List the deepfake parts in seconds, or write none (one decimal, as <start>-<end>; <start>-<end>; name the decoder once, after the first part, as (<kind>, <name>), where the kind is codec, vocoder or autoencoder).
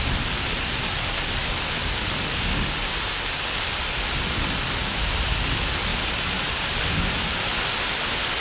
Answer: 5.9-6.8 (vocoder, BigVGAN v2)